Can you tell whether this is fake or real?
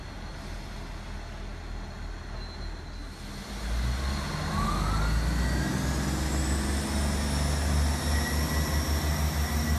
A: real